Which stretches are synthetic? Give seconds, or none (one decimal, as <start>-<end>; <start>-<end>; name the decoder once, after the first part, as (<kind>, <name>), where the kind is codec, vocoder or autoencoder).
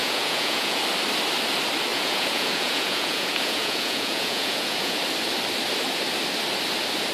0.0-0.8 (vocoder, Vocos); 1.9-5.0